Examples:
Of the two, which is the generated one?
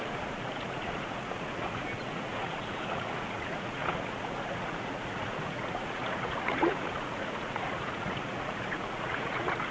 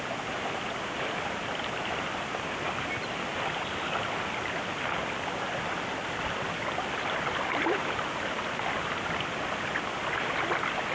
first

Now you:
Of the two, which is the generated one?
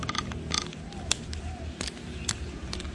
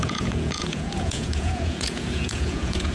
second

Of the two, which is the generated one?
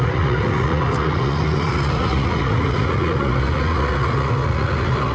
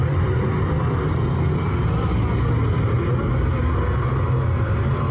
first